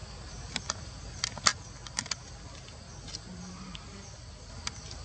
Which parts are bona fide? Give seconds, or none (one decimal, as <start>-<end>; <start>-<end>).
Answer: 0.0-5.0